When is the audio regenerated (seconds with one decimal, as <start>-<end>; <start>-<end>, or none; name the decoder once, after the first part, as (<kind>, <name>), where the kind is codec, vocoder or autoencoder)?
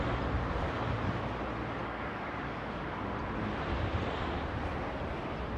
1.8-3.1 (codec, DAC)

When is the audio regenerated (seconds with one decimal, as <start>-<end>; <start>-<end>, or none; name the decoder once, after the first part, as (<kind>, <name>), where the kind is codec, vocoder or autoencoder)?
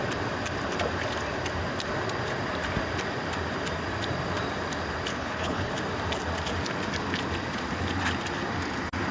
5.1-5.7 (codec, HILCodec)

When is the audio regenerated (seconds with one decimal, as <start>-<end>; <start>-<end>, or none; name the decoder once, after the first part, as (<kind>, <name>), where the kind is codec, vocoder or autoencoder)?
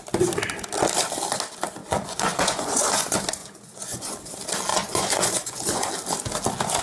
1.8-3.0 (vocoder, Vocos); 3.4-4.1; 4.7-5.9